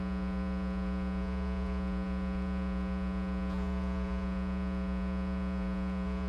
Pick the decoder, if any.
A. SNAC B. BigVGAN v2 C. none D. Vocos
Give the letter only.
D